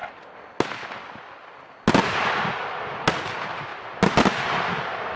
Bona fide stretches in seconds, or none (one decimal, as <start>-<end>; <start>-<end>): 0.0-5.2